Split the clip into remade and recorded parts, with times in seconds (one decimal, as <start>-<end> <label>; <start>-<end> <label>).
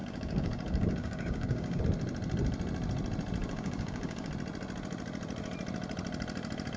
0.0-1.8 remade; 1.8-3.4 recorded; 3.4-4.3 remade; 4.3-6.8 recorded